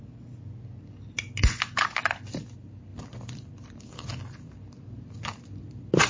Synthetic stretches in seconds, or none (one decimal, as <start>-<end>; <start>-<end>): 2.9-6.1